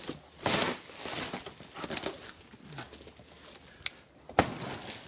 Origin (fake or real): real